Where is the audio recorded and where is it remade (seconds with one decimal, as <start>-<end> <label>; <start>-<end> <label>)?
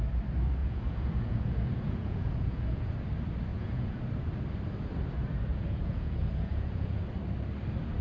0.0-0.6 recorded; 0.6-2.9 remade; 2.9-3.5 recorded; 3.5-4.0 remade; 4.0-5.5 recorded; 5.5-7.0 remade; 7.0-8.0 recorded